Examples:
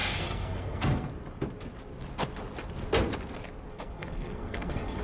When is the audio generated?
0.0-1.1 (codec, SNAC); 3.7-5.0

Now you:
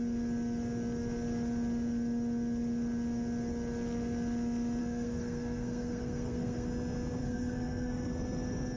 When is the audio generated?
4.8-6.7 (codec, SNAC); 7.2-8.1

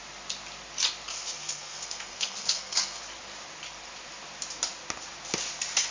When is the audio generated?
1.1-3.0 (codec, SNAC)

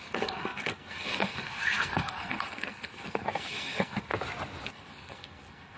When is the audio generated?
0.0-4.1 (codec, SNAC); 4.7-5.8

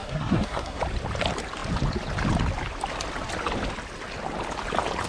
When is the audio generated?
0.0-0.8 (codec, SNAC)